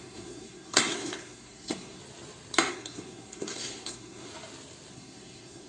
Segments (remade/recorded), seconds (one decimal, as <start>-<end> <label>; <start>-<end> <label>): 0.0-2.0 remade; 2.0-2.7 recorded; 2.7-4.3 remade; 4.3-4.9 recorded; 4.9-5.7 remade